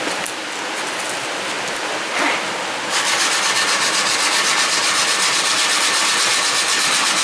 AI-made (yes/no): no